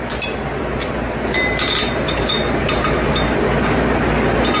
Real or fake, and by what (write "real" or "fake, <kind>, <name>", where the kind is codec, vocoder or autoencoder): real